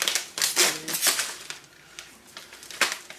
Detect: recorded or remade recorded